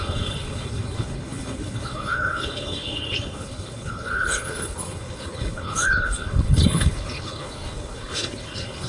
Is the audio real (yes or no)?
no